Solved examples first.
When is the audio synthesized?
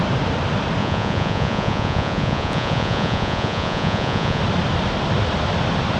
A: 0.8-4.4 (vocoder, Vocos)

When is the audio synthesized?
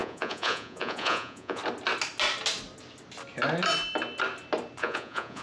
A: 0.0-1.6 (vocoder, Vocos); 4.8-5.4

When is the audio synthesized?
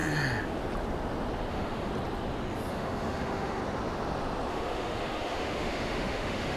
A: 1.5-1.9 (autoencoder, DAC-VAE); 2.7-3.6; 4.5-6.6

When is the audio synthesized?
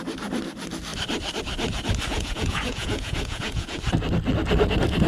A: 2.1-3.8 (vocoder, Vocos)